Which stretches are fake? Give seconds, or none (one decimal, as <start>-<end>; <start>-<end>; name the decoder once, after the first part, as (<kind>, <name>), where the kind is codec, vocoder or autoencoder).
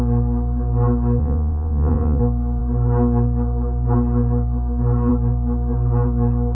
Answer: 1.2-2.2 (vocoder, Vocos)